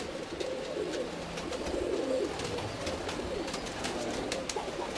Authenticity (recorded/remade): recorded